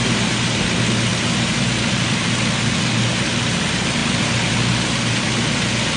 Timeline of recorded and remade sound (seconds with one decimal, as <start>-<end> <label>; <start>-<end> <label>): 0.0-6.0 recorded